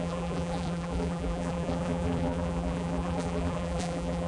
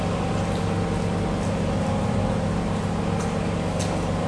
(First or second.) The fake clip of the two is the first